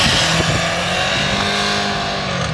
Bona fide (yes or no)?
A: yes